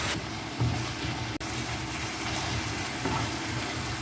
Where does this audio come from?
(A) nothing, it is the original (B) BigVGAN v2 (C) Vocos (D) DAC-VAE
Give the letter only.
A